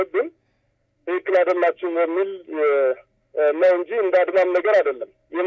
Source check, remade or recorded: recorded